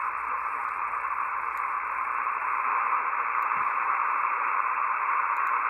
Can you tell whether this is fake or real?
real